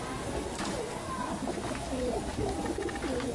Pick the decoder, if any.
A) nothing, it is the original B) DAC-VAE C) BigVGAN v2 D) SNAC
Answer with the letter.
A